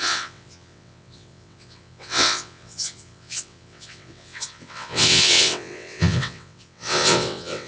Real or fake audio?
fake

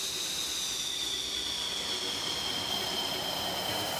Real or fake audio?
real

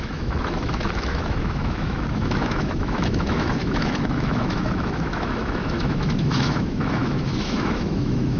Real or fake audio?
fake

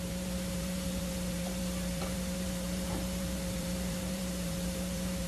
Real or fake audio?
fake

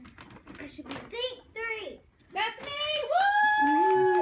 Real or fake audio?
real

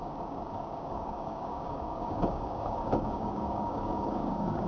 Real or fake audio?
fake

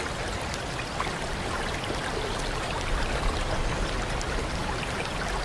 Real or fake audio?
real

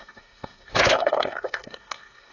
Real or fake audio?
fake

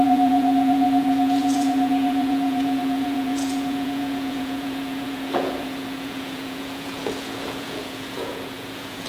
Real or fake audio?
fake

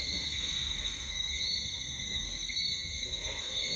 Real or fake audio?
fake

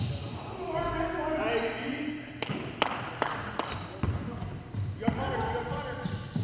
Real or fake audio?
real